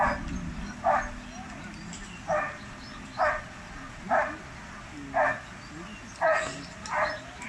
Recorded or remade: recorded